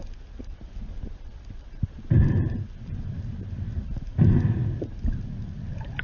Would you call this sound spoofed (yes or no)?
no